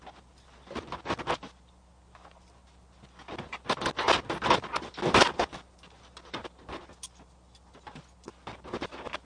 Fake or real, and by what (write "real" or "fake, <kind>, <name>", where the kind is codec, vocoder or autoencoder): real